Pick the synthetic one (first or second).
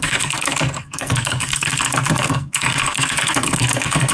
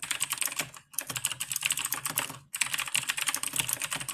first